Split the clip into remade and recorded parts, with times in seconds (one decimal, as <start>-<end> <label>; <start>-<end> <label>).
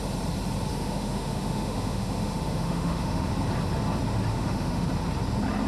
0.0-0.7 recorded; 0.7-3.3 remade; 3.3-4.3 recorded; 4.3-4.9 remade; 4.9-5.7 recorded